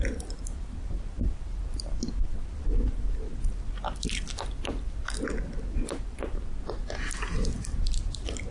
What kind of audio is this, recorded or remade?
remade